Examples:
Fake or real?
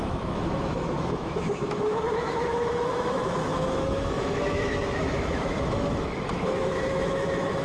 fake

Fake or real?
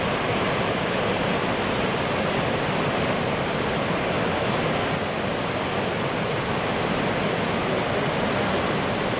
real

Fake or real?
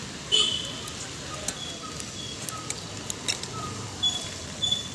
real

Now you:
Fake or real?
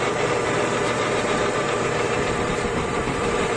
fake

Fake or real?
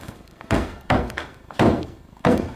fake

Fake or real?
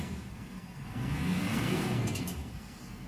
fake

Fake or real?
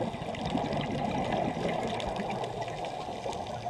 real